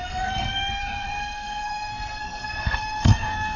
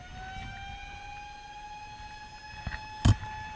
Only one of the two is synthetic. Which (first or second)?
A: first